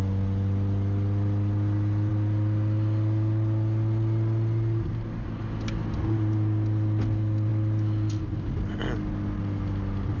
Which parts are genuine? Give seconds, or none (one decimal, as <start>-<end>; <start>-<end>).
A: 0.0-10.2